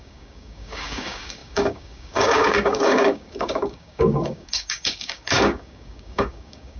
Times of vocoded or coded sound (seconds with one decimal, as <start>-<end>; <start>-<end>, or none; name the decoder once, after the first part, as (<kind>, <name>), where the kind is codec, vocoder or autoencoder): 0.0-6.8 (codec, DAC)